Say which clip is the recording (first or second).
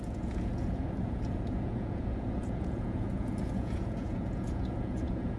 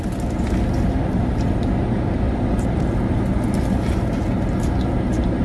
second